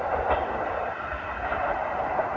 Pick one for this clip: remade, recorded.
remade